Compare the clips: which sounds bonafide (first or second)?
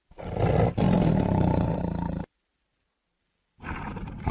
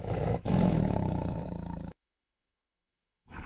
first